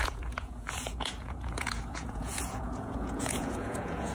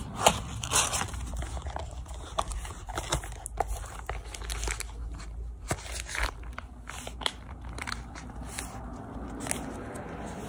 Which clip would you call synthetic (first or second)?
first